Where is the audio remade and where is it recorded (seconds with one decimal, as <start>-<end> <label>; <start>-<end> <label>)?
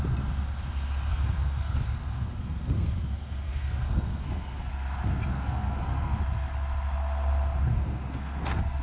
0.0-1.1 recorded; 1.1-4.7 remade; 4.7-5.3 recorded; 5.3-6.2 remade; 6.2-7.7 recorded; 7.7-8.8 remade